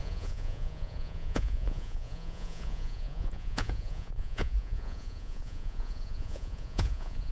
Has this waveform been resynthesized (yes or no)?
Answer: yes